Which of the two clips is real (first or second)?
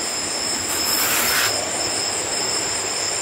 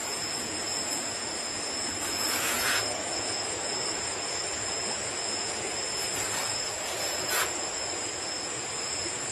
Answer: first